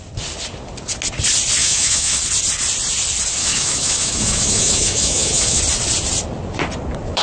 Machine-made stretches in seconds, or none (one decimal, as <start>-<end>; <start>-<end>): 1.6-2.2; 3.4-5.6